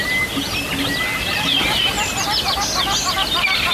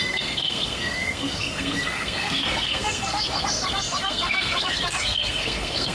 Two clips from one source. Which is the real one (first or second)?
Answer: first